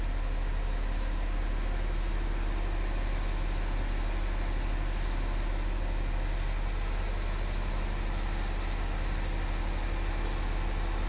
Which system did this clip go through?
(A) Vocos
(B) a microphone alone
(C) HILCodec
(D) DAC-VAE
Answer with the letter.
B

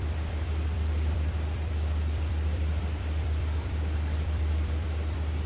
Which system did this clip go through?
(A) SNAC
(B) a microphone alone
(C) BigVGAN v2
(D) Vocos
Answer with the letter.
C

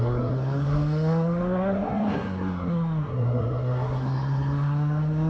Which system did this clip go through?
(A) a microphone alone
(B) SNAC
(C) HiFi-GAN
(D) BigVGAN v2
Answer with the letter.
B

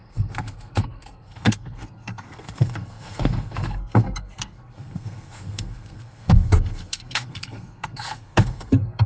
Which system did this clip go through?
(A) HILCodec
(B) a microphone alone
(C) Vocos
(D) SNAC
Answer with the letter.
D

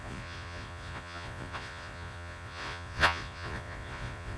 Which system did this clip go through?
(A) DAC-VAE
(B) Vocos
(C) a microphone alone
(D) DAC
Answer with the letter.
B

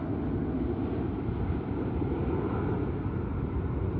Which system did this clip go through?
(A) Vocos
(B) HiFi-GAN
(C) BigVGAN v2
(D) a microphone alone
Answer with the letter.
D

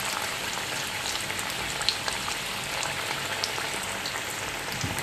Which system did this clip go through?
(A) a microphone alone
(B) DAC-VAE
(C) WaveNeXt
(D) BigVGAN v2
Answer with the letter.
A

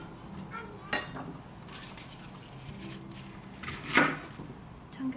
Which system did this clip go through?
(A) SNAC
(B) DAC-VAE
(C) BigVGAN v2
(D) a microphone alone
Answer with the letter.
D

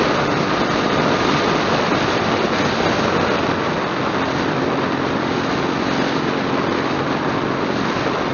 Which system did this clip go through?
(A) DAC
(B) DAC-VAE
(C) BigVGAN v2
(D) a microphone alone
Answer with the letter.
D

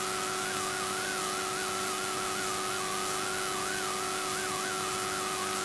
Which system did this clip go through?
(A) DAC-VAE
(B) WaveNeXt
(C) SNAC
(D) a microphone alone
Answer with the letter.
D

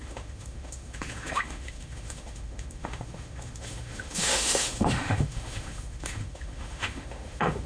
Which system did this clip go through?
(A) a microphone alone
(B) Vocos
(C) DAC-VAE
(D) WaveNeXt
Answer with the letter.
C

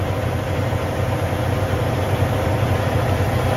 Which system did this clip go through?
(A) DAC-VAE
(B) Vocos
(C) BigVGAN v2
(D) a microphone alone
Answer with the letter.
D